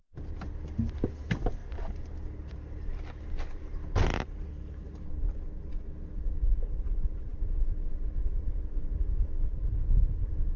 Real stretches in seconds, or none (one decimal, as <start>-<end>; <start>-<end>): 0.0-10.6